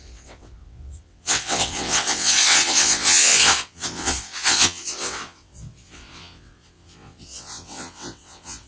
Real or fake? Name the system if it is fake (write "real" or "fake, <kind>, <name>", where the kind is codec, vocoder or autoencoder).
fake, vocoder, WaveNeXt